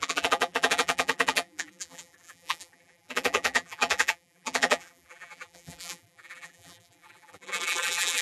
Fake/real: fake